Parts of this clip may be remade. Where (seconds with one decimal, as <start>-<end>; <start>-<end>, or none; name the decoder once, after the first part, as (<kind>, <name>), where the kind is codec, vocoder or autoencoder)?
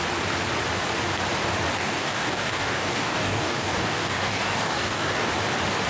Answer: 1.8-5.3 (codec, DAC)